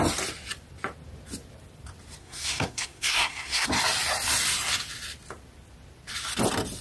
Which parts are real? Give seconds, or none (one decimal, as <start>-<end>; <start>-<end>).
0.0-2.2; 3.7-6.8